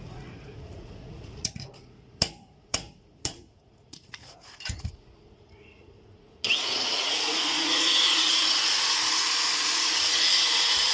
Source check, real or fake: fake